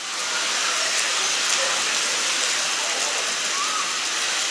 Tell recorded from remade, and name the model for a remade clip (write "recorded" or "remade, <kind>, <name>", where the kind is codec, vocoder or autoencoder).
recorded